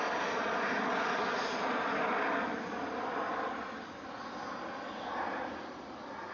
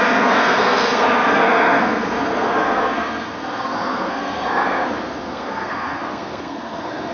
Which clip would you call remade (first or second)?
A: second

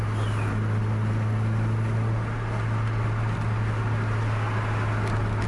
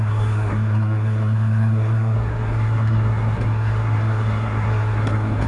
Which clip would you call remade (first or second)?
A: second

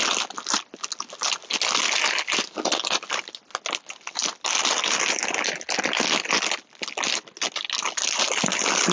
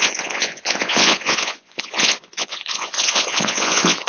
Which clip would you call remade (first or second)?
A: second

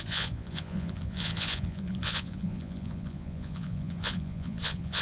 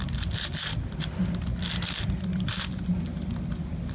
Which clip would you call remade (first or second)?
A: first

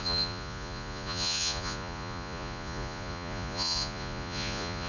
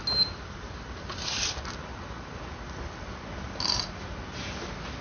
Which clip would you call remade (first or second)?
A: first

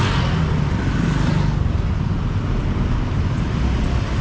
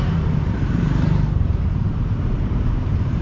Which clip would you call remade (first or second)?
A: second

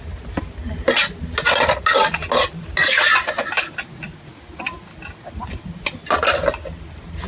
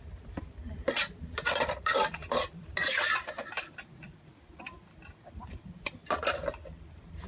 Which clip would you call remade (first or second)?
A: second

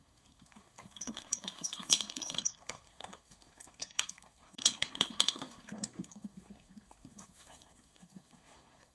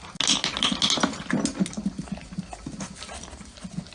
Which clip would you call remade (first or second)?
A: first